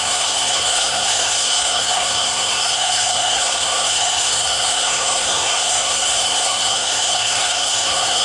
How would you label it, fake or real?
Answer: fake